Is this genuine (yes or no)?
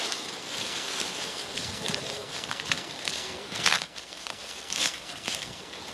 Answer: no